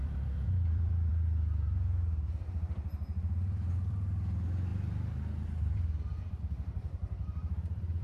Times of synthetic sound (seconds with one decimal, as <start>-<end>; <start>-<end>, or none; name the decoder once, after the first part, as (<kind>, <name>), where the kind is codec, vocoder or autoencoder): 0.0-1.1 (vocoder, BigVGAN v2); 3.8-8.0